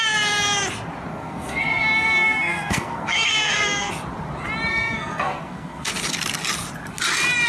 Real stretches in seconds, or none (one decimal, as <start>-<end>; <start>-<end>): 0.0-1.1; 3.9-4.7; 5.9-7.5